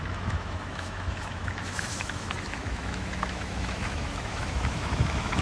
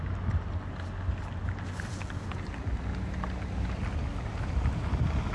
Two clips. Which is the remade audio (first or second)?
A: first